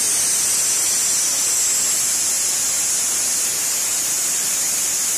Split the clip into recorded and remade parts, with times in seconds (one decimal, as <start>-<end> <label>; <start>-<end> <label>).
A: 0.0-5.2 recorded